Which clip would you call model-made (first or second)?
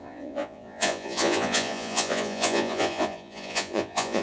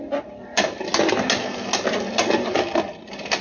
first